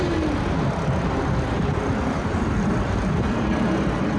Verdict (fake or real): real